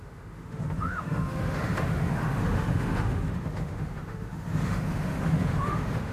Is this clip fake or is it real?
fake